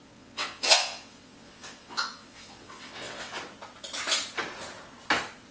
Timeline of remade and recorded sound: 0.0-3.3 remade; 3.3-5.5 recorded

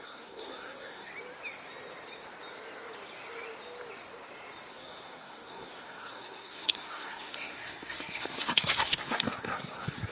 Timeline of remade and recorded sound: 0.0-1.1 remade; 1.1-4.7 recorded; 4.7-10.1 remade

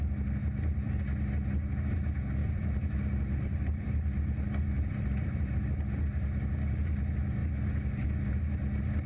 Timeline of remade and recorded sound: 0.0-0.4 recorded; 0.4-1.0 remade; 1.0-2.4 recorded; 2.4-5.6 remade; 5.6-9.1 recorded